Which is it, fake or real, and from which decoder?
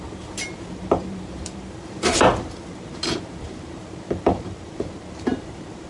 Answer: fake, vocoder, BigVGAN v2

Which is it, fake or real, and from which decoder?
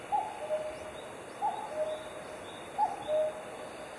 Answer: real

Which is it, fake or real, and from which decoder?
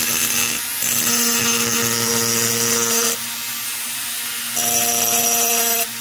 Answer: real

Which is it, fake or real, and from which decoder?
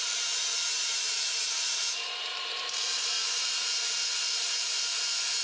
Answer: fake, vocoder, BigVGAN v2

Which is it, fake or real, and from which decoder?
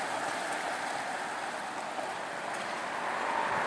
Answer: fake, vocoder, BigVGAN v2